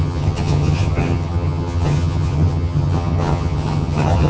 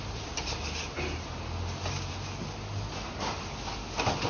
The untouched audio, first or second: second